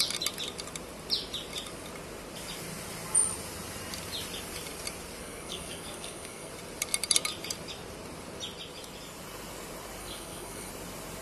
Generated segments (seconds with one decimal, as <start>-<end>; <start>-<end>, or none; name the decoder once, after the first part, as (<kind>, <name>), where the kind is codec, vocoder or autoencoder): 5.2-6.5 (codec, SNAC); 10.0-10.7